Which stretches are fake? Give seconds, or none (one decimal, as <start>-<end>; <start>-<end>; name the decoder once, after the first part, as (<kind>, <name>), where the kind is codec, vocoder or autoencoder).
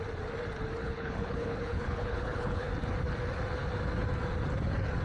0.8-2.7 (codec, HILCodec)